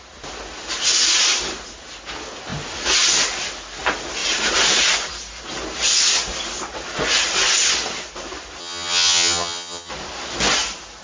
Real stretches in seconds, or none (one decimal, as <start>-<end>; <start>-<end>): 0.0-8.6; 9.9-11.0